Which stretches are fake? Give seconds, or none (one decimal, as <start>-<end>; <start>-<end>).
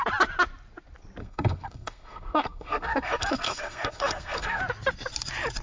1.2-4.6